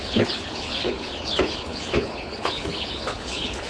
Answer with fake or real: fake